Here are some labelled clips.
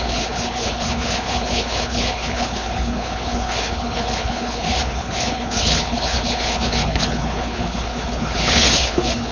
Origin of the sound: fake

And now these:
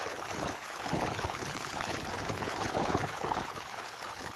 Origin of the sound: fake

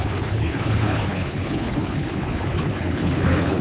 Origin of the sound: fake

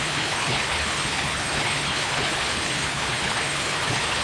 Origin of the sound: fake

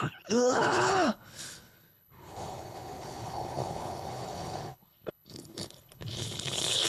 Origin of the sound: fake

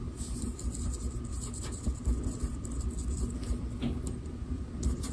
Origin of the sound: real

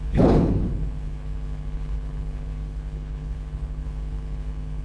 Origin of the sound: fake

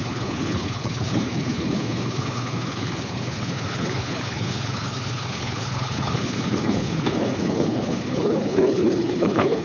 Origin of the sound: fake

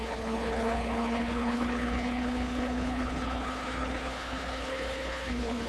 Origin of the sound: fake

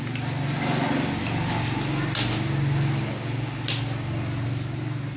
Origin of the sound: real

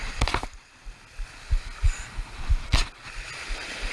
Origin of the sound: real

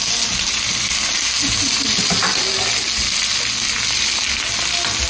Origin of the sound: real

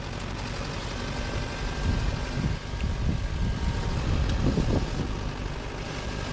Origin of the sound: real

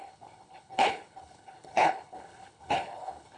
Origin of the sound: fake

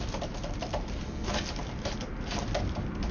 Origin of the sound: real